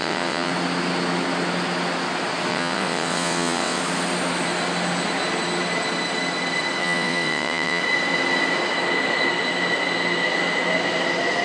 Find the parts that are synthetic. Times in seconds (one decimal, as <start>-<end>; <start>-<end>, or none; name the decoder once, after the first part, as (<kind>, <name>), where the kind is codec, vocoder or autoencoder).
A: 0.0-0.5 (vocoder, WaveNeXt); 2.5-3.8; 6.8-7.8